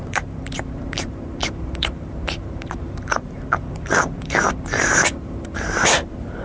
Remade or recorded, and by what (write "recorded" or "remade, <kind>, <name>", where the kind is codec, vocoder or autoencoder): remade, vocoder, BigVGAN v2